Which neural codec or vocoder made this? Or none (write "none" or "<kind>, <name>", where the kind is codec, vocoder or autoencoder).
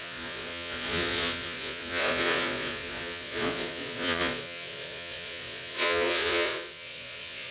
vocoder, Vocos